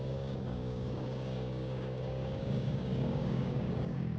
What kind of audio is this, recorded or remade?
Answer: remade